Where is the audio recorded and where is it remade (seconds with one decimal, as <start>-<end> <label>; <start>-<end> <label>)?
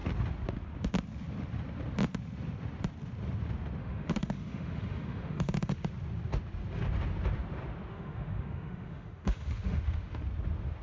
0.0-3.8 recorded; 3.8-5.9 remade; 5.9-7.9 recorded; 7.9-10.2 remade; 10.2-10.8 recorded